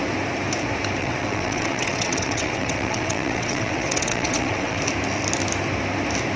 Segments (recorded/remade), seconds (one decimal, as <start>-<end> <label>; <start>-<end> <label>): 0.0-1.0 recorded; 1.0-4.8 remade; 4.8-6.4 recorded